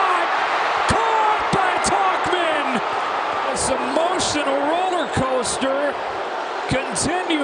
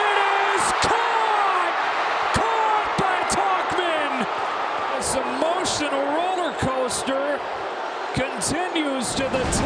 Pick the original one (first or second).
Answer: second